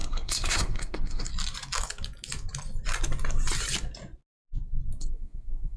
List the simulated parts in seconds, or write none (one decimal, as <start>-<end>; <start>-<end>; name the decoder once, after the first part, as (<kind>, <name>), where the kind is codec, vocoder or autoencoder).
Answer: 0.0-1.3 (codec, SNAC); 5.0-5.8